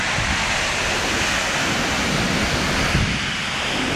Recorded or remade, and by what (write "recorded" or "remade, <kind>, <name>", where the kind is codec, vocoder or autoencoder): recorded